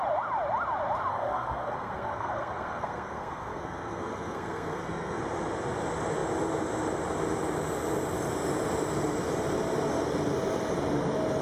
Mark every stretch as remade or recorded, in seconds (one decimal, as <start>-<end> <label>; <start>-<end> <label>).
0.0-1.1 recorded; 1.1-5.2 remade; 5.2-11.4 recorded